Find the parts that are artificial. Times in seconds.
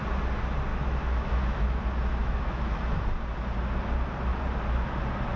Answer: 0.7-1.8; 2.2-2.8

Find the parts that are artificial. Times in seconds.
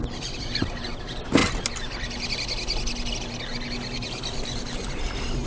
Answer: none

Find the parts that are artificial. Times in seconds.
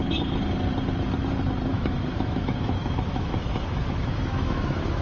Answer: 1.7-5.0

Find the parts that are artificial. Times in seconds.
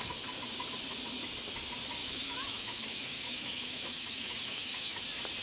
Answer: 2.0-5.0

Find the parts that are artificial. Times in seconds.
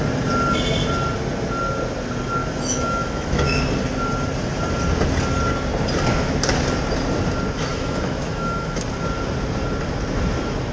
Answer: 2.4-3.6; 7.7-8.8